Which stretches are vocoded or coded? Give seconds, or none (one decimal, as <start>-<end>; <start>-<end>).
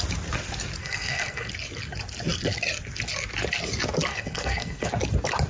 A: 0.8-1.5; 4.1-4.9